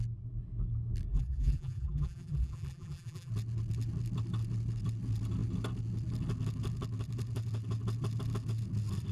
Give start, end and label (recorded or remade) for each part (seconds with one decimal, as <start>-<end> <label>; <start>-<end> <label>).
0.0-1.1 recorded; 1.1-3.3 remade; 3.3-9.1 recorded